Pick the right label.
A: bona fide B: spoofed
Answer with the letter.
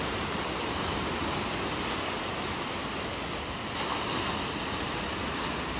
A